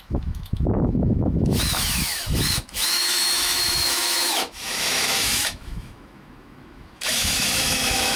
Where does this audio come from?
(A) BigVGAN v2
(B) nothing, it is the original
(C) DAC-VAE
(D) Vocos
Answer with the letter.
C